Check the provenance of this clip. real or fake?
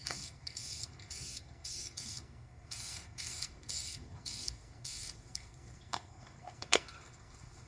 fake